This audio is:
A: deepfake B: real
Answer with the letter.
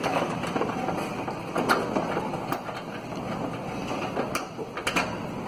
B